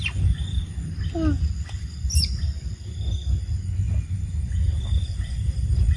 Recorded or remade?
recorded